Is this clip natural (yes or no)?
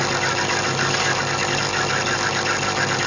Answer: yes